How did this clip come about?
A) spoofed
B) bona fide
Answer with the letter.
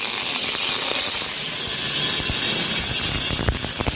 B